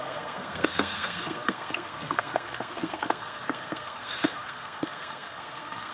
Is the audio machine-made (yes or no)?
yes